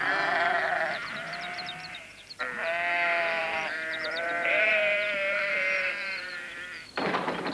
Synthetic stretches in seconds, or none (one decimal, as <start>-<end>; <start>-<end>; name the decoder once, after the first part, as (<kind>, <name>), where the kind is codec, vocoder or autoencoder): 1.3-2.3 (vocoder, BigVGAN v2); 3.4-7.5